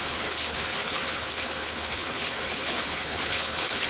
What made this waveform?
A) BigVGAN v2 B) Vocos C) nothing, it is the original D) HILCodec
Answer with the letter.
D